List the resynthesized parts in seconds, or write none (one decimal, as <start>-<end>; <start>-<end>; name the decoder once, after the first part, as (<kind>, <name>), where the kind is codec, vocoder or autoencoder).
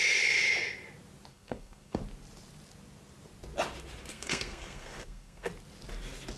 1.3-2.0 (codec, SNAC); 4.1-5.5